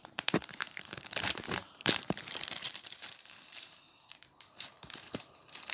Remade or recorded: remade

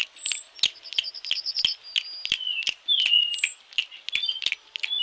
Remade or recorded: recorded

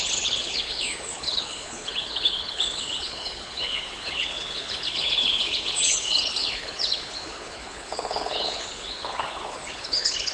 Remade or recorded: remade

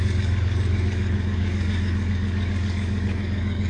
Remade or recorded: remade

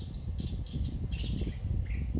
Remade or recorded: recorded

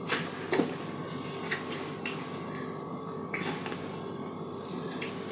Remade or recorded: recorded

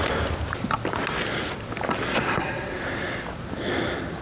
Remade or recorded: recorded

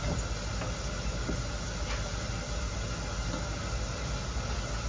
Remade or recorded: recorded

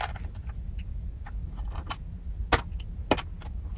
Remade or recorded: recorded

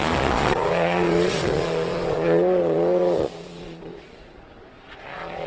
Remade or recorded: remade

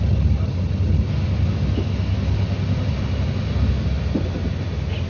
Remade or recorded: recorded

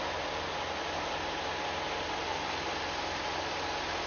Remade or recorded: recorded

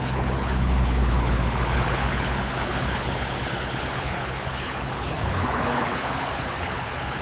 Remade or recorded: remade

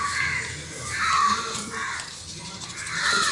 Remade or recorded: recorded